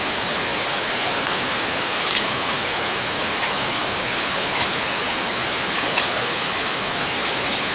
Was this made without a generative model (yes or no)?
no